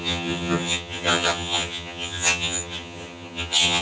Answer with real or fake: fake